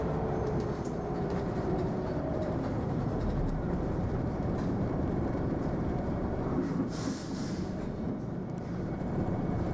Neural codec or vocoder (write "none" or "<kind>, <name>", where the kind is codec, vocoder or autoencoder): vocoder, BigVGAN v2